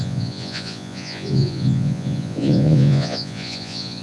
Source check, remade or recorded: remade